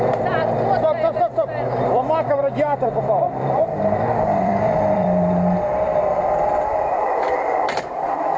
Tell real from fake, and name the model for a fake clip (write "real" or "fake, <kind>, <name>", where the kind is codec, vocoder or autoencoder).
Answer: fake, vocoder, BigVGAN v2